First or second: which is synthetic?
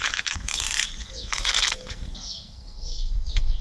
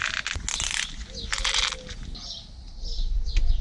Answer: first